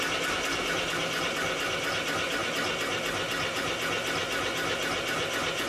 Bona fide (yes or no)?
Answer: yes